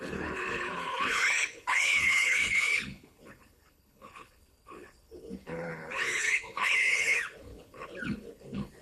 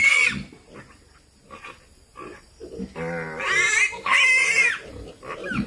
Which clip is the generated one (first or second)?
first